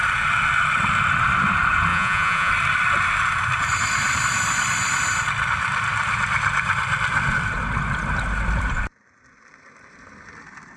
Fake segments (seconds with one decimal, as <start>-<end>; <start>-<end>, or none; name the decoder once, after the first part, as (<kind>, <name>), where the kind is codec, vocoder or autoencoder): 1.9-2.5 (vocoder, Vocos)